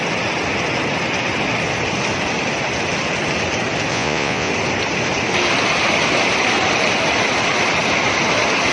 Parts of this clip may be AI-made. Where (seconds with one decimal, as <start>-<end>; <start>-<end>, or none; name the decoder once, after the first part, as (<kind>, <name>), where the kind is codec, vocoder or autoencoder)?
3.9-4.5 (vocoder, Vocos)